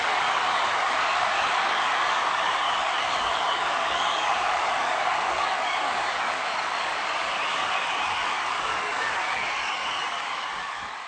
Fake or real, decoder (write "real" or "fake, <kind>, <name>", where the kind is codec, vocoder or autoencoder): fake, codec, DAC